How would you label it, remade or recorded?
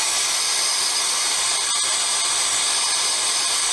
recorded